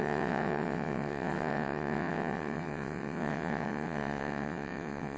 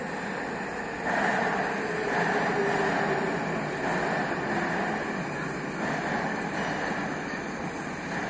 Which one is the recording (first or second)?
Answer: second